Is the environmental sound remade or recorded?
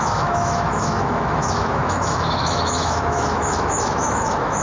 remade